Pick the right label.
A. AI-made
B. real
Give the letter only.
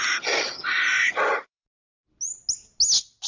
B